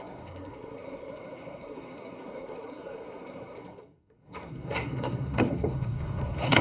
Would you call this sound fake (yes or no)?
yes